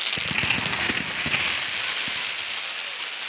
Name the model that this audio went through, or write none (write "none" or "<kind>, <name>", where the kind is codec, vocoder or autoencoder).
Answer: none